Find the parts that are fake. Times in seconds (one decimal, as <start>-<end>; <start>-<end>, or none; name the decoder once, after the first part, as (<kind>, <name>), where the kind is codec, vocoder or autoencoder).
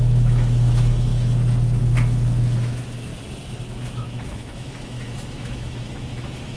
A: 0.0-1.1 (autoencoder, DAC-VAE); 1.8-3.1; 3.8-6.6